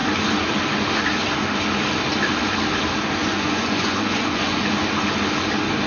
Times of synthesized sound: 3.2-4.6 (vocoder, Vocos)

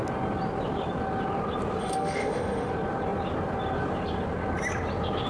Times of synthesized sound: 1.8-2.7 (autoencoder, DAC-VAE)

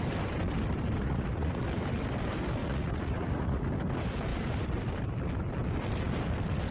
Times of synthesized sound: 1.0-1.6 (vocoder, Vocos); 2.6-3.6

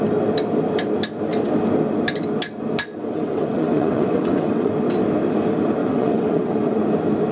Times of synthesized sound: 3.0-4.7 (vocoder, WaveNeXt); 5.8-6.8

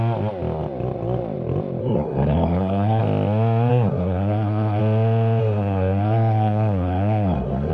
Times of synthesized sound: 1.8-3.0 (codec, SNAC); 3.7-4.8; 5.4-7.7

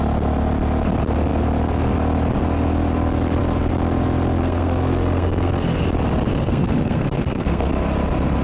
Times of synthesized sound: 4.4-5.5 (codec, SNAC); 6.4-7.7

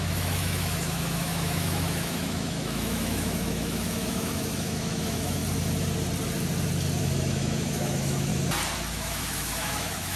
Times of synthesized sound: 0.0-5.4 (autoencoder, DAC-VAE); 7.0-8.3; 8.9-10.2

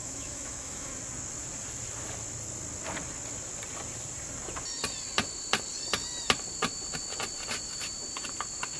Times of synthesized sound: 0.0-0.9 (autoencoder, DAC-VAE)